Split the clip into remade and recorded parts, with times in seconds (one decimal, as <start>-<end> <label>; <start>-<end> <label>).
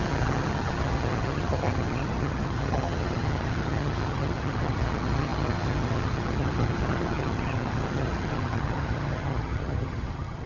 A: 0.0-10.5 remade